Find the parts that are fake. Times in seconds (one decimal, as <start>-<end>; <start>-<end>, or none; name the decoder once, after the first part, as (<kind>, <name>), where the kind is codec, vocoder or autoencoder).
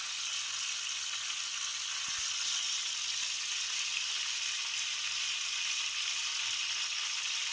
none